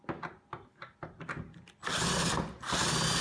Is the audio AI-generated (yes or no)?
no